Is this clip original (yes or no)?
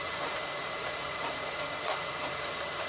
no